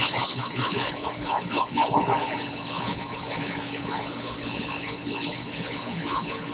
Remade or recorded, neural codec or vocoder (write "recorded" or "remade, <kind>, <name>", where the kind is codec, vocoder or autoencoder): remade, codec, HILCodec